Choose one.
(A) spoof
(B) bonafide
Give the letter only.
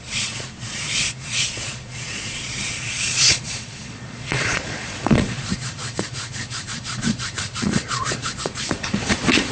A